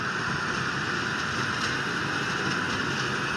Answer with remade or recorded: recorded